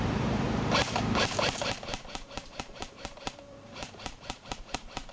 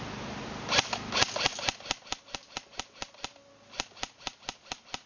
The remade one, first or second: first